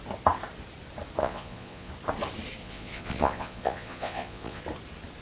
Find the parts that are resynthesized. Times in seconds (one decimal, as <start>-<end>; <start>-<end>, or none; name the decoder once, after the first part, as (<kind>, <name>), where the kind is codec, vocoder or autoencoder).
1.2-1.9 (vocoder, Vocos); 2.6-4.6

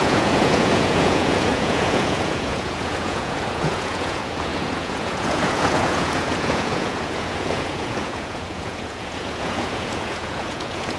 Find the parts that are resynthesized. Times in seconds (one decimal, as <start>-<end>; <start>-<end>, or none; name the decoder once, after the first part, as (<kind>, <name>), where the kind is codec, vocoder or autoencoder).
0.0-11.0 (vocoder, Vocos)

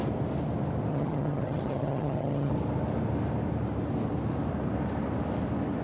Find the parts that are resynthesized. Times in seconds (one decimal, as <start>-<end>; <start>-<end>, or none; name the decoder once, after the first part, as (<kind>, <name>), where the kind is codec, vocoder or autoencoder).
0.9-2.5 (vocoder, HiFi-GAN)

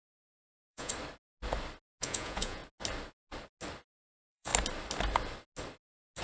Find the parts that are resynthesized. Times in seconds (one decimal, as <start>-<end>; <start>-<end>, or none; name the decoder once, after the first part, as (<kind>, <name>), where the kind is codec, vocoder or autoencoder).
0.0-0.9 (vocoder, Vocos); 2.0-2.6; 4.1-4.5

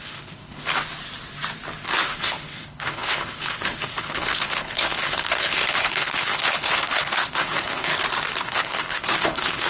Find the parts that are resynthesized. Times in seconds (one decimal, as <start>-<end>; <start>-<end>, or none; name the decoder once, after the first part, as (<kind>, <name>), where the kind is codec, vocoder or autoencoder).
0.0-0.6 (codec, HILCodec); 2.1-7.9; 8.4-9.7

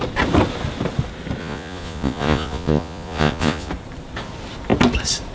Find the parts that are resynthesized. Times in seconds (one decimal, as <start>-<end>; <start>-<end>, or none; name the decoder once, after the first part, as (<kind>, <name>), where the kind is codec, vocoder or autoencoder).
1.4-3.7 (vocoder, Vocos)